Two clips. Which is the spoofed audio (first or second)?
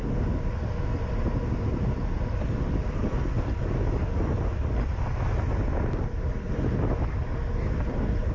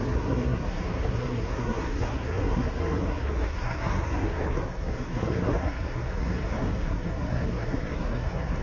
second